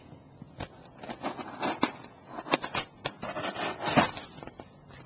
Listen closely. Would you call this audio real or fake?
real